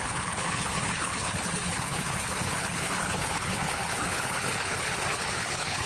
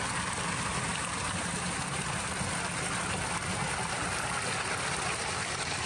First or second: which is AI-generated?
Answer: first